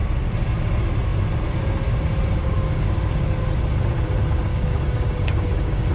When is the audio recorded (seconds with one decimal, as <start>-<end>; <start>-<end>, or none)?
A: 0.0-2.4; 3.2-4.5